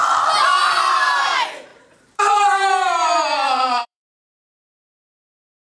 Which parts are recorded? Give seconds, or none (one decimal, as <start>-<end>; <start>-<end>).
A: 0.0-1.7; 5.0-5.6